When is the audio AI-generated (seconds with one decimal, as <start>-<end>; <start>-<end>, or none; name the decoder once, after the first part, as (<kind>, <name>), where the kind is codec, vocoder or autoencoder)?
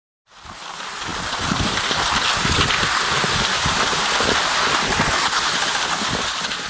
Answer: none